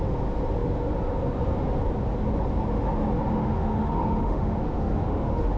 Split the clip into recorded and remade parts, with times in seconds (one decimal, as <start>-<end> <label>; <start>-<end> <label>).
0.0-3.4 recorded; 3.4-5.6 remade